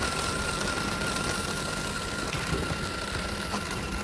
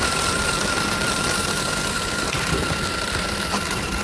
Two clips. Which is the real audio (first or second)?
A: first